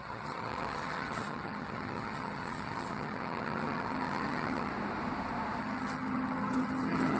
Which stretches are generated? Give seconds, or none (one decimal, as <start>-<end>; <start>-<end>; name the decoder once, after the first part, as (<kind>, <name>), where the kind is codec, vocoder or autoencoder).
0.0-4.7 (vocoder, HiFi-GAN); 5.6-7.2

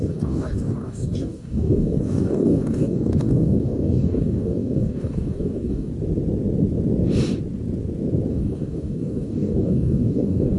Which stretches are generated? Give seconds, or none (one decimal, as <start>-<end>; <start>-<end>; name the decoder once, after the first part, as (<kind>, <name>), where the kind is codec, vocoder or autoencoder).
0.0-5.9 (codec, DAC); 8.3-10.6

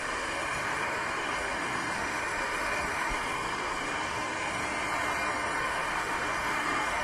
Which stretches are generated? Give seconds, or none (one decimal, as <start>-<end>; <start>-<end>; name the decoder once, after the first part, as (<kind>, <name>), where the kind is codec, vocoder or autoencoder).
0.0-4.6 (autoencoder, DAC-VAE); 5.6-7.0

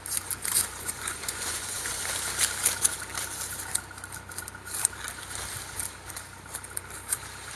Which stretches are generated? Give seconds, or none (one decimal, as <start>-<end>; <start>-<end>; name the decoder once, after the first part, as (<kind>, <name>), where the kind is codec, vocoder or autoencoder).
0.7-2.0 (vocoder, Vocos)

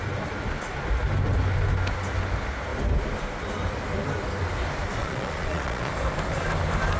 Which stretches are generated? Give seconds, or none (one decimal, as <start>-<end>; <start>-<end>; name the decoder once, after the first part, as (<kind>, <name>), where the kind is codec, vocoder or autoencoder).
5.0-5.9 (vocoder, Vocos)

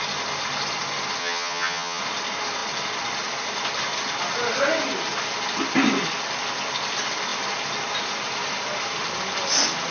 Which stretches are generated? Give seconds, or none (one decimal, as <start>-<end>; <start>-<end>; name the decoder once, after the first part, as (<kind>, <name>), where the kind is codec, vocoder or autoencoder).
1.2-2.0 (vocoder, HiFi-GAN)